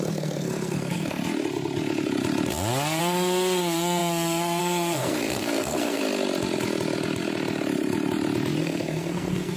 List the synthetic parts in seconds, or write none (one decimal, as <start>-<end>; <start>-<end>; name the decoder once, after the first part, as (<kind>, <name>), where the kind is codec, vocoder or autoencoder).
0.0-1.2 (codec, SNAC); 3.0-6.0; 8.6-9.6